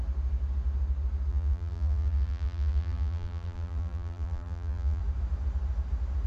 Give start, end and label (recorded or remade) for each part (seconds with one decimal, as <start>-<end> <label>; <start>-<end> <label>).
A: 0.0-1.3 recorded; 1.3-5.0 remade; 5.0-6.3 recorded